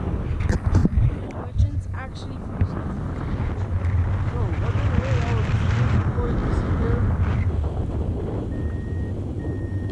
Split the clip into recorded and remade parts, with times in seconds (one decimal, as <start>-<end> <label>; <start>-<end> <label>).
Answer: 0.0-9.9 recorded